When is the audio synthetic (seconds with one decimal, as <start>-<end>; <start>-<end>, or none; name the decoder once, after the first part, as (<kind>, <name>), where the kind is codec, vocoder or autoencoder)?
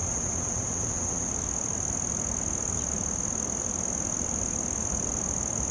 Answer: 0.0-1.3 (vocoder, WaveNeXt)